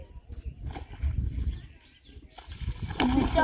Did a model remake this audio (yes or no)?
no